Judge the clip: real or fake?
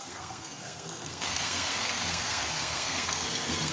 fake